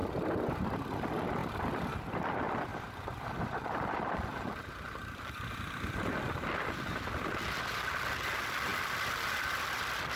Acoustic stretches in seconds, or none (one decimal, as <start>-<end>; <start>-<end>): 0.0-1.4; 2.2-2.7; 4.5-10.2